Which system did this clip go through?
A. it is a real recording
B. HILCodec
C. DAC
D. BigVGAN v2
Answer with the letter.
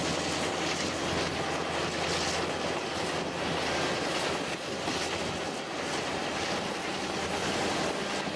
A